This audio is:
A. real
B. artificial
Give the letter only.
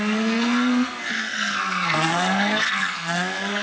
B